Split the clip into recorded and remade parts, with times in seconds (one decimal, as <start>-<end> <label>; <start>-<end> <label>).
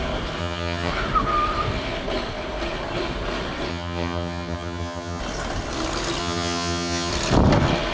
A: 0.0-0.4 recorded; 0.4-0.9 remade; 0.9-3.7 recorded; 3.7-5.2 remade; 5.2-6.2 recorded; 6.2-7.1 remade; 7.1-7.9 recorded